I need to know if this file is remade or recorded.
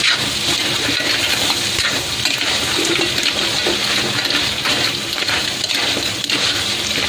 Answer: remade